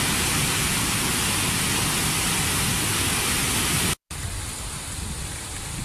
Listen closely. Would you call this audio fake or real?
real